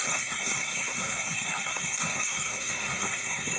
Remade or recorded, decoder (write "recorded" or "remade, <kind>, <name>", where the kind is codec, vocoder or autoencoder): remade, codec, SNAC